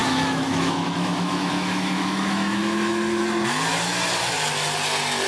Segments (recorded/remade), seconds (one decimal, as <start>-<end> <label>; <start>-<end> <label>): 0.0-3.2 remade; 3.2-5.3 recorded